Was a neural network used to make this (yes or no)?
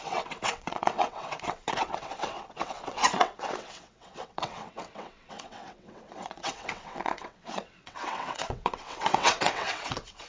yes